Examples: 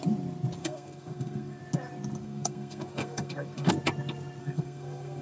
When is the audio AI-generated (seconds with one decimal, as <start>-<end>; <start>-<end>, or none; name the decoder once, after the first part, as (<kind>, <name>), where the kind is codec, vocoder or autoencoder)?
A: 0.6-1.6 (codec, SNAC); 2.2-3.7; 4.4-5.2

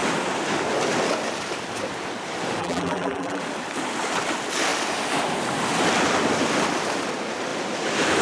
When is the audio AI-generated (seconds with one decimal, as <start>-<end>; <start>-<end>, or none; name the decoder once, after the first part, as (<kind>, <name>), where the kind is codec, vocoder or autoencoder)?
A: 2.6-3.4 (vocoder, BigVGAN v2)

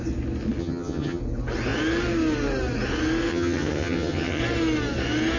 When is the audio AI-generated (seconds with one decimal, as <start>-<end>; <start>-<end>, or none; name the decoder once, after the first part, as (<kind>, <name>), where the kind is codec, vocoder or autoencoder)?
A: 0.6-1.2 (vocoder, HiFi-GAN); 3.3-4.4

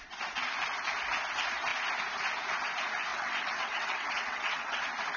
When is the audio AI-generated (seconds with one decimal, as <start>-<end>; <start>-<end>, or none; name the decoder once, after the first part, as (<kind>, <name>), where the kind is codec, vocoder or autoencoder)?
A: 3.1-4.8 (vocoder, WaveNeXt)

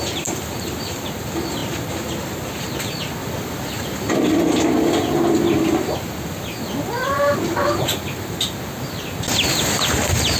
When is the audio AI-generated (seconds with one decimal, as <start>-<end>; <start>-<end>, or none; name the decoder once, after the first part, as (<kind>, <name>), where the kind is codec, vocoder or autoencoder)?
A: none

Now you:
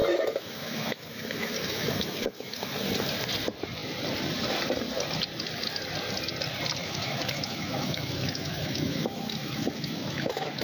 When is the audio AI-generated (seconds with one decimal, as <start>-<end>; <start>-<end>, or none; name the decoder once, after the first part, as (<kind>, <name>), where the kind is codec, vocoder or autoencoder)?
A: 0.0-2.7 (autoencoder, DAC-VAE); 6.8-10.6

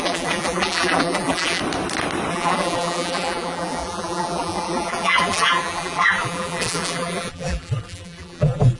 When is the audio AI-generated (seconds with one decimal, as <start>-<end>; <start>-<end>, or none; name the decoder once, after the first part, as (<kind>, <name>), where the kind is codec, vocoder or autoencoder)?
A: 0.0-1.6 (vocoder, BigVGAN v2); 2.3-8.8